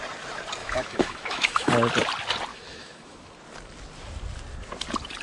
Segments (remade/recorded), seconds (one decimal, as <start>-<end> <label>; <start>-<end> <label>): 0.0-0.6 recorded; 0.6-1.7 remade; 1.7-2.5 recorded; 2.5-3.3 remade; 3.3-5.2 recorded